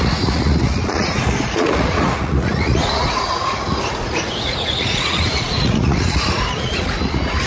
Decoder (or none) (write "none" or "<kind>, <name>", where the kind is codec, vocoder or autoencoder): vocoder, Vocos